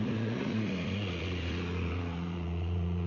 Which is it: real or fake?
fake